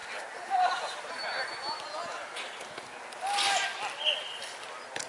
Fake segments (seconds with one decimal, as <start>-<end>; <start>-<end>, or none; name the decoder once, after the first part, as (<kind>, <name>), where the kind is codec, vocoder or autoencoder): none